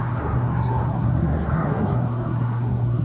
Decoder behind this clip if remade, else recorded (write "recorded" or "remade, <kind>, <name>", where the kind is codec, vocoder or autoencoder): remade, codec, SNAC